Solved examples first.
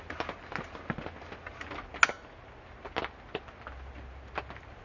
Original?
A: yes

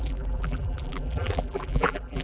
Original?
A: no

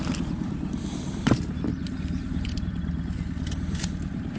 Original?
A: no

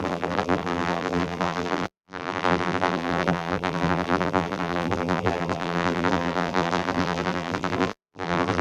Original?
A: no